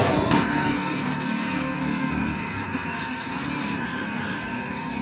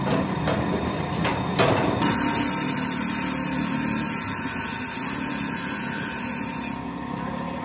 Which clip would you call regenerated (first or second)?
first